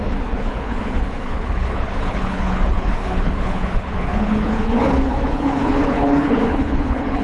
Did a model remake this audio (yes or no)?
yes